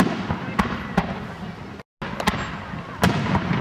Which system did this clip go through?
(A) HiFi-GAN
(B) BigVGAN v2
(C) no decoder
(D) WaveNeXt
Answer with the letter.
C